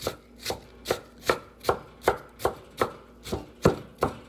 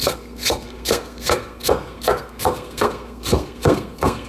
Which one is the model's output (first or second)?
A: second